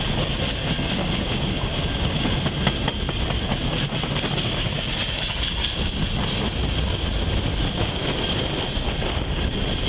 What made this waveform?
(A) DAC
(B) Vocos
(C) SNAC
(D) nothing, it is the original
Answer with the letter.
D